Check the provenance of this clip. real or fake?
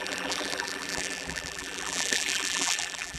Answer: fake